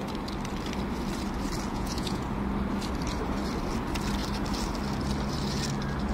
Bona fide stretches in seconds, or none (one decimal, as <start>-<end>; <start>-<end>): 0.0-1.7; 2.2-6.1